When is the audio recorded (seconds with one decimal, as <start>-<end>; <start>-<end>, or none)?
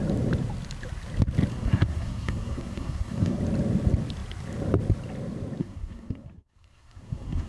0.0-1.5; 3.4-5.6